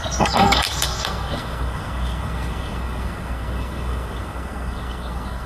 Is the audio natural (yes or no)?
no